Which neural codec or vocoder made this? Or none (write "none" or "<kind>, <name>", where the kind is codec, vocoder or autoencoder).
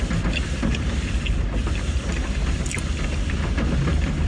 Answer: none